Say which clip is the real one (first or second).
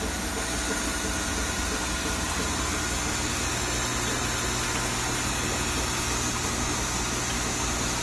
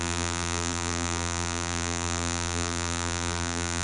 first